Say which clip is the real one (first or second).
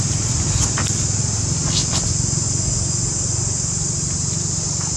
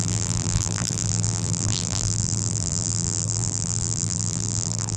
first